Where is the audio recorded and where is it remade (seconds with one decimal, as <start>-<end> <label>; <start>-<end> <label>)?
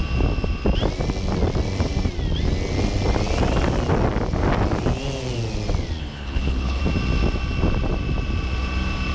0.0-6.0 recorded; 6.0-6.8 remade; 6.8-9.1 recorded